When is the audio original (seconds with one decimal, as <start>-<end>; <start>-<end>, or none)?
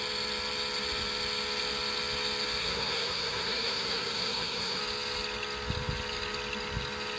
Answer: 0.0-2.6; 4.8-7.2